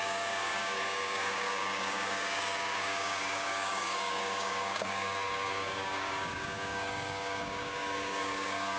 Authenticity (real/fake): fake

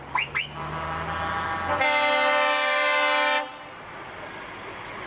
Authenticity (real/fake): real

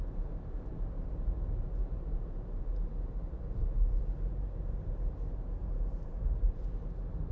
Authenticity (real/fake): fake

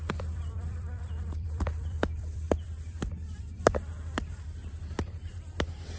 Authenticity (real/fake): fake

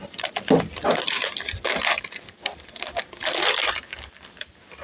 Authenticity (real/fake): real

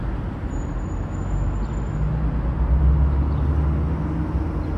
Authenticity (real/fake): real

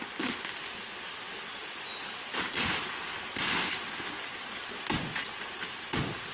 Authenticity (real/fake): real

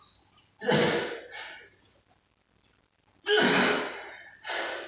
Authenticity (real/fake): real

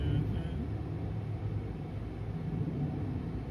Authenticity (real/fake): real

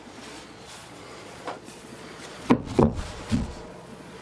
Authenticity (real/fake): fake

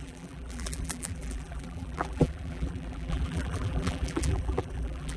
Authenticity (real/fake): fake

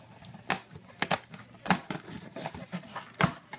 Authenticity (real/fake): real